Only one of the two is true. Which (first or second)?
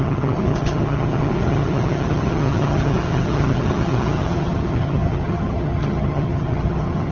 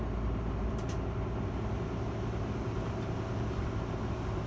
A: second